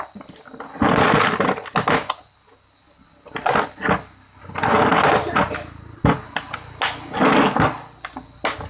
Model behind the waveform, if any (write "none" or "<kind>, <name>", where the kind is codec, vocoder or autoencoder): none